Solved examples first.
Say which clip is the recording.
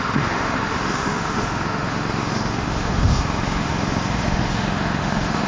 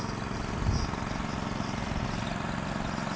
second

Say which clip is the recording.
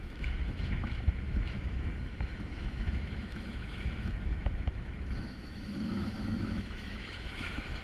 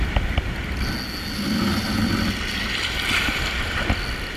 second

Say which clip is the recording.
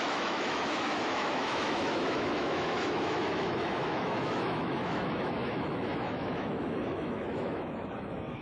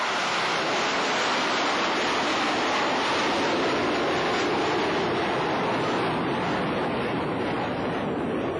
second